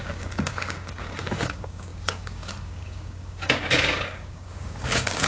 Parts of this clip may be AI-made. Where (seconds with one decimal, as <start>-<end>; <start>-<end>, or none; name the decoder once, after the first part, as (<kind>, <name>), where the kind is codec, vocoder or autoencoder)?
0.0-5.3 (codec, DAC)